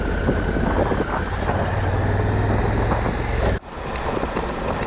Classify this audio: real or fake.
real